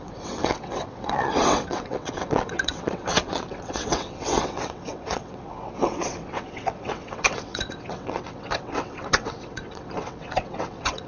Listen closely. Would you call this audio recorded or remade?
remade